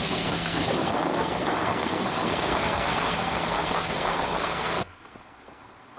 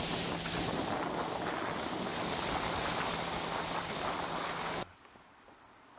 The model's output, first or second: first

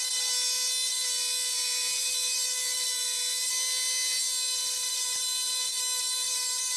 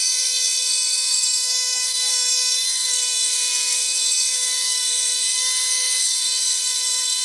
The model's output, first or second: second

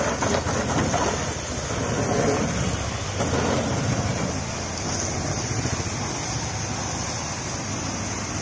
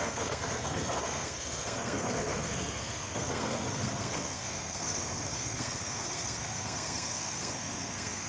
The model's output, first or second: second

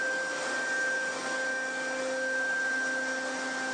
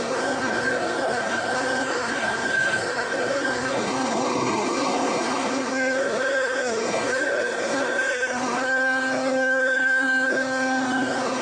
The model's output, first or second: second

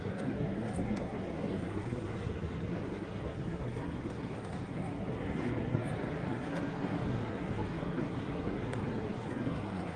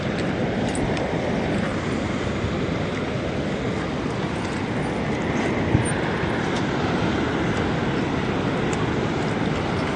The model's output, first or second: first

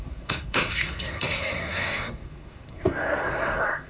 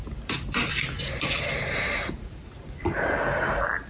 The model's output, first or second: first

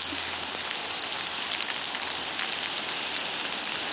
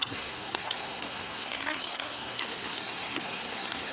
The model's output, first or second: second